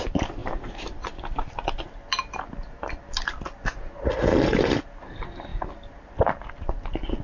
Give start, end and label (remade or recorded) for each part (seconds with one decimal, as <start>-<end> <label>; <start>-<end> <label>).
0.0-7.2 recorded